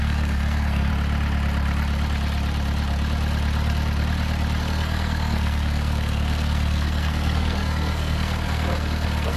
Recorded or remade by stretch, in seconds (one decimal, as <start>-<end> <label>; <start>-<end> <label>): 0.0-0.9 remade; 0.9-4.6 recorded; 4.6-9.4 remade